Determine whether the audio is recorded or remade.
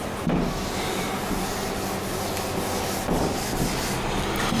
recorded